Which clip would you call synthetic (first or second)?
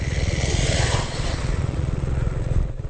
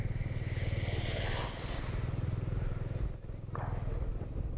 first